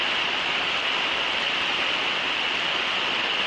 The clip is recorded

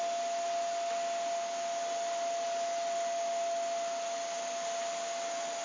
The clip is recorded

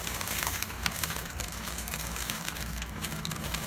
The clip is remade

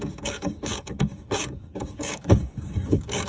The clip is remade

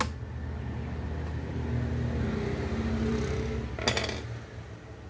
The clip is recorded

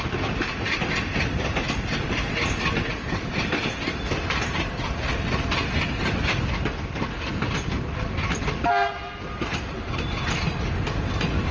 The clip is recorded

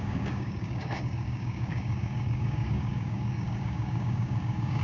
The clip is remade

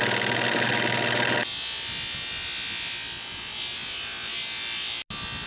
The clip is recorded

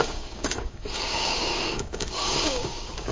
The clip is remade